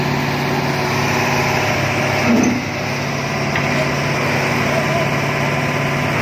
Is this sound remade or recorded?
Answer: recorded